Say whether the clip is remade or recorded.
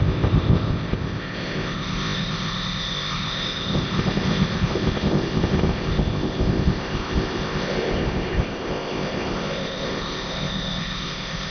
remade